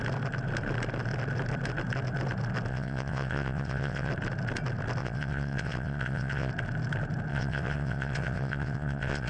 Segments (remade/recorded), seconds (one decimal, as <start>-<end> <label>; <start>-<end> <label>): 0.0-2.7 recorded; 2.7-4.1 remade; 4.1-5.0 recorded; 5.0-6.5 remade; 6.5-7.3 recorded; 7.3-9.3 remade